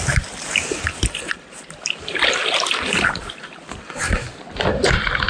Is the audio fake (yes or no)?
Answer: no